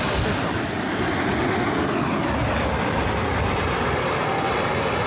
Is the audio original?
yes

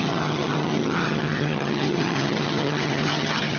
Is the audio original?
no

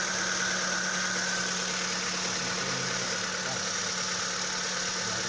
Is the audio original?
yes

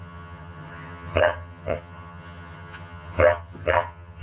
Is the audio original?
no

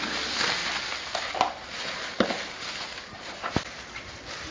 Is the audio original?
yes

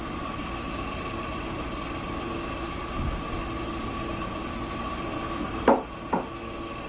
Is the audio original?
yes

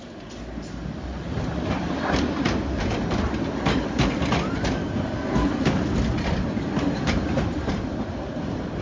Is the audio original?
yes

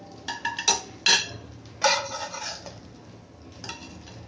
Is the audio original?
yes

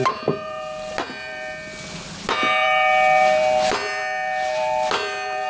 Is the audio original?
yes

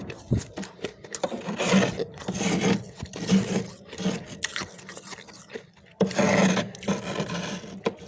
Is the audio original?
yes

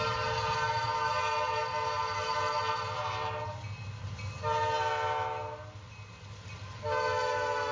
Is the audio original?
yes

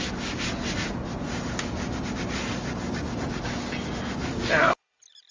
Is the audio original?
yes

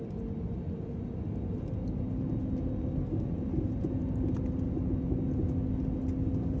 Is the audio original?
yes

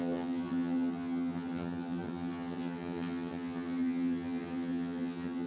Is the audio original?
no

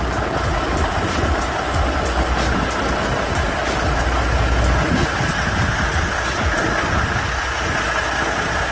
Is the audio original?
yes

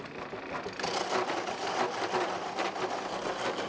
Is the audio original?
yes